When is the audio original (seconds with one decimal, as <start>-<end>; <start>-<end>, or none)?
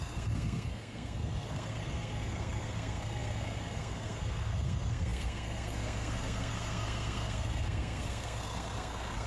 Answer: none